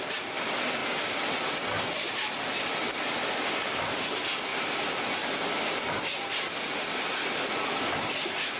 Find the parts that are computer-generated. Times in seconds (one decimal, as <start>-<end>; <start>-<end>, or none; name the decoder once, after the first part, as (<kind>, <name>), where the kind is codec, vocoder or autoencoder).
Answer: none